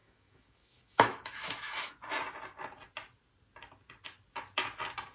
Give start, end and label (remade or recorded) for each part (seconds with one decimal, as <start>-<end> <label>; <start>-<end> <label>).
0.0-1.9 remade; 1.9-5.1 recorded